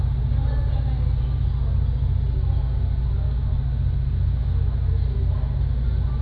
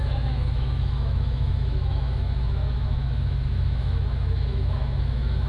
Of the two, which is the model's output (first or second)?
second